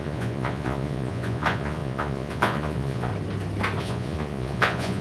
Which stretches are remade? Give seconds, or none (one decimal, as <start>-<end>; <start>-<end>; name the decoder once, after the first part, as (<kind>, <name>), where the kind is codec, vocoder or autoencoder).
0.0-3.1 (vocoder, Vocos); 3.8-5.0